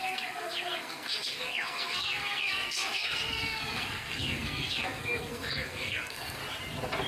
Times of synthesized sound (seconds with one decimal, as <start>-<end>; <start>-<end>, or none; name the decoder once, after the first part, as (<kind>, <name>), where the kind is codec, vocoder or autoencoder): 0.0-6.4 (codec, SNAC)